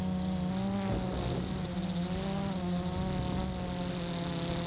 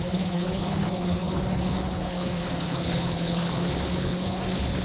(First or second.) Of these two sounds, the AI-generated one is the second